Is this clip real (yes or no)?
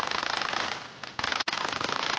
yes